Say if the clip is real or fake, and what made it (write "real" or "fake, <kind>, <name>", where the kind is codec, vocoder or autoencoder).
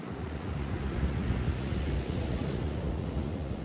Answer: fake, vocoder, Vocos